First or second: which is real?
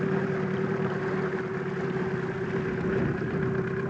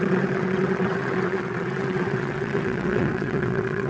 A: first